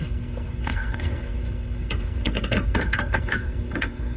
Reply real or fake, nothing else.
fake